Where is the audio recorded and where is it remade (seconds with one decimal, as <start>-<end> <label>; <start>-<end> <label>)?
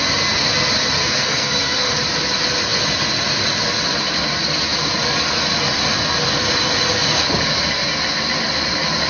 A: 0.0-1.0 recorded; 1.0-1.9 remade; 1.9-9.1 recorded